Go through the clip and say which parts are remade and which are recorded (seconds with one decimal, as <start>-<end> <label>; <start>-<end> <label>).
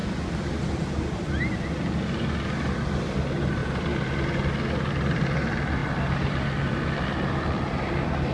0.0-3.6 recorded; 3.6-4.1 remade; 4.1-5.8 recorded; 5.8-7.4 remade; 7.4-8.3 recorded